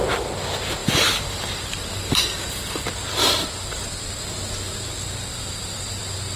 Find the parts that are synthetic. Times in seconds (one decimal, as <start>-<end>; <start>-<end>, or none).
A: 0.8-2.9; 5.3-6.0